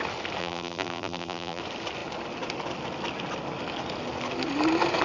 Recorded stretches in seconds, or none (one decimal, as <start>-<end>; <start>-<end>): 0.0-0.4; 1.6-5.0